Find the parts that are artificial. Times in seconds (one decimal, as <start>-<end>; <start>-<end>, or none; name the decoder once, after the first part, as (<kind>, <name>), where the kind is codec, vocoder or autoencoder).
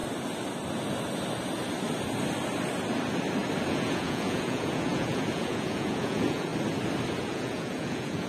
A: 3.7-6.5 (vocoder, Vocos); 7.1-8.3